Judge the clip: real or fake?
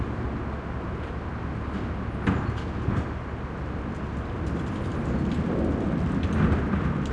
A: real